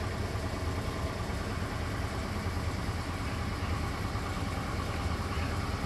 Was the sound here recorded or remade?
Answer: recorded